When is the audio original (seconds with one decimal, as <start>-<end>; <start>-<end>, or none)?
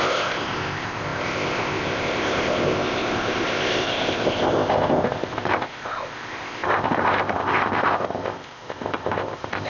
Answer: none